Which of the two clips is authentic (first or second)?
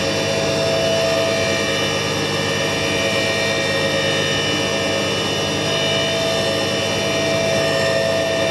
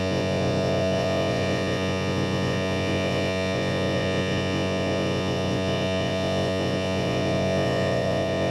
first